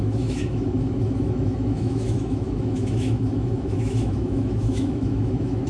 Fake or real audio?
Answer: fake